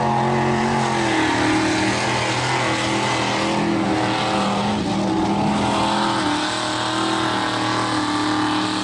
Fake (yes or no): no